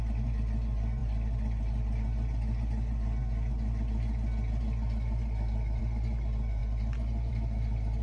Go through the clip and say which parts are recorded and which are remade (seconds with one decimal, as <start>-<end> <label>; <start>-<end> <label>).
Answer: 0.0-8.0 recorded